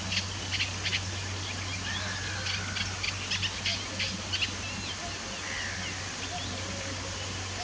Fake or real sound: real